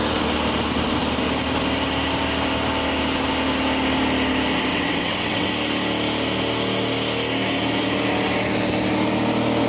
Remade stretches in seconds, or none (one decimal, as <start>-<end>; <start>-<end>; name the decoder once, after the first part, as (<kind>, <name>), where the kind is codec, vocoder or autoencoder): 4.7-5.5 (vocoder, WaveNeXt)